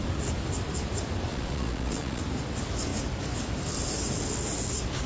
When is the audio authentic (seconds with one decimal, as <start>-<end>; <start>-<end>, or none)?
0.0-1.3; 2.2-5.1